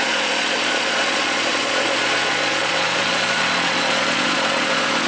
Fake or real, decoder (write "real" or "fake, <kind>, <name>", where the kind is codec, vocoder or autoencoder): fake, vocoder, Vocos